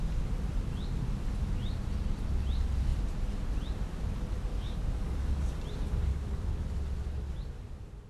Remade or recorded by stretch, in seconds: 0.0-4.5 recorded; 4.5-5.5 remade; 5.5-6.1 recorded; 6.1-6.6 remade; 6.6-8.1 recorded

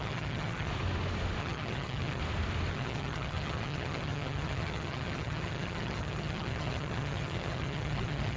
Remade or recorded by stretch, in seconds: 0.0-0.7 remade; 0.7-1.4 recorded; 1.4-2.2 remade; 2.2-2.7 recorded; 2.7-8.4 remade

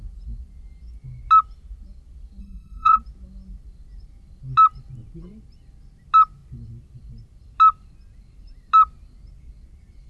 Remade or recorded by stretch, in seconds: 0.0-2.4 recorded; 2.4-3.0 remade; 3.0-10.1 recorded

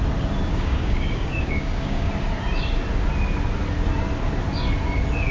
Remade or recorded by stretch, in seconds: 0.0-0.5 recorded; 0.5-2.1 remade; 2.1-5.3 recorded

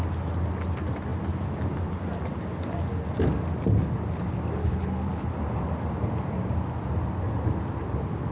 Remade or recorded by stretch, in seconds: 0.0-4.6 recorded; 4.6-5.3 remade; 5.3-8.3 recorded

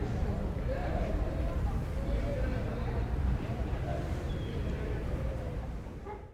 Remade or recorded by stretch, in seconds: 0.0-0.8 recorded; 0.8-1.7 remade; 1.7-2.3 recorded; 2.3-6.3 remade